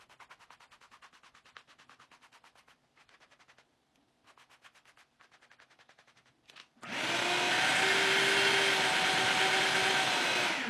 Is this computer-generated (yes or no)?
no